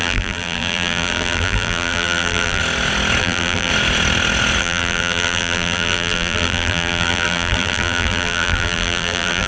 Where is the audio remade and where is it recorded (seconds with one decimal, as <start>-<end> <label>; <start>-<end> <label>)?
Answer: 0.0-2.6 remade; 2.6-3.2 recorded; 3.2-3.7 remade; 3.7-4.6 recorded; 4.6-9.5 remade